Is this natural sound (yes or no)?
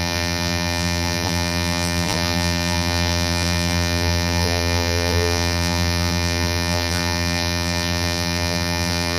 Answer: no